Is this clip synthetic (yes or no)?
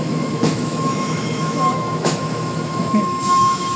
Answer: yes